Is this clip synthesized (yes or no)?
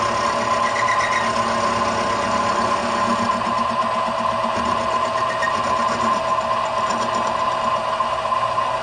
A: no